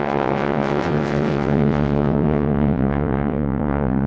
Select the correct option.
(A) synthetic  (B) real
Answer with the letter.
A